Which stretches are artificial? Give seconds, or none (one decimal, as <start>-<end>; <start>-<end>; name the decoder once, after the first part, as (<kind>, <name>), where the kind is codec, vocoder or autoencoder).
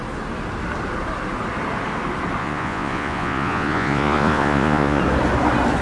2.4-5.0 (vocoder, Vocos)